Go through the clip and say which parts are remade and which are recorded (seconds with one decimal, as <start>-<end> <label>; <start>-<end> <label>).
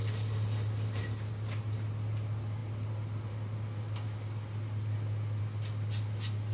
0.0-6.5 recorded